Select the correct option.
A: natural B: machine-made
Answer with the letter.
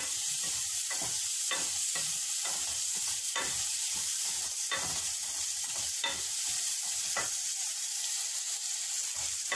B